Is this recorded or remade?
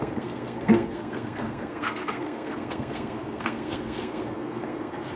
remade